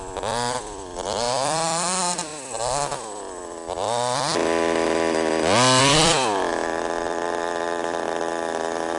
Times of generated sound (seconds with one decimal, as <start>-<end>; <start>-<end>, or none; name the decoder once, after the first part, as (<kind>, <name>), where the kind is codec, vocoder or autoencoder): 0.0-2.3 (vocoder, BigVGAN v2); 5.8-9.0